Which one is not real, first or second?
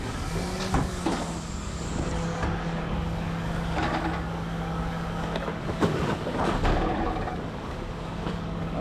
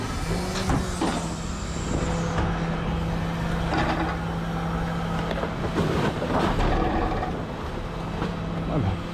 first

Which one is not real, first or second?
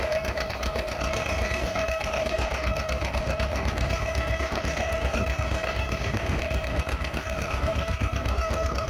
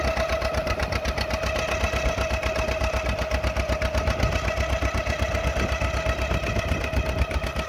first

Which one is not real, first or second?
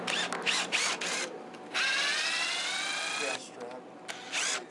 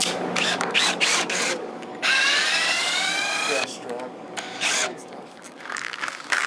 second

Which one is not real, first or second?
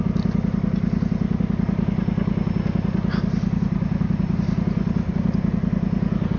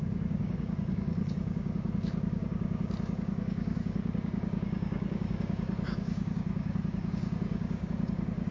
second